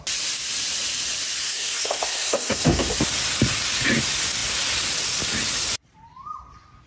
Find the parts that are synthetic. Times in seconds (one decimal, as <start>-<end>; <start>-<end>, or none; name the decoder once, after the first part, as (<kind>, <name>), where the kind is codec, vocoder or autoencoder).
1.4-2.9 (codec, SNAC)